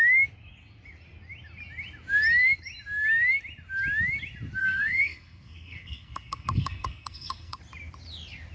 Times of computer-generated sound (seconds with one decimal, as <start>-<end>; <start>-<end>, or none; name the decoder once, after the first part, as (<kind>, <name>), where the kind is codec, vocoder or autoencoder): 4.6-7.6 (codec, SNAC)

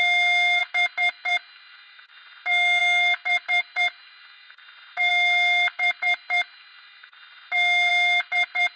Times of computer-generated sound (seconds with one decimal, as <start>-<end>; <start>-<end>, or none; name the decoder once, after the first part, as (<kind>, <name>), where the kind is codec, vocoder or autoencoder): none

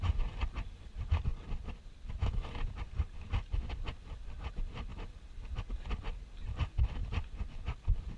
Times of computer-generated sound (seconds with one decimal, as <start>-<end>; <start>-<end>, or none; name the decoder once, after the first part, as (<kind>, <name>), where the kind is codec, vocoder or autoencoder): none

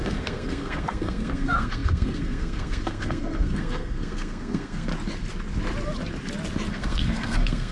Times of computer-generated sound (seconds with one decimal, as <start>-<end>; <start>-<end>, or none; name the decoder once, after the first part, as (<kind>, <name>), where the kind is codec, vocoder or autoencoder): 0.0-4.9 (codec, SNAC); 6.7-7.7

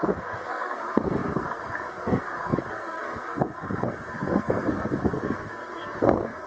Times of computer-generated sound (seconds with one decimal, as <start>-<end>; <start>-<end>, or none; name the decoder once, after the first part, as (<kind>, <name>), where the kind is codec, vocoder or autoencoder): 0.0-6.5 (codec, SNAC)

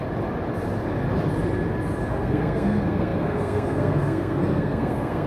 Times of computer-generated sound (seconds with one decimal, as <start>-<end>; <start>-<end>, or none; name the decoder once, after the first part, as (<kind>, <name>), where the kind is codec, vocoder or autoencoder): 2.1-5.3 (codec, SNAC)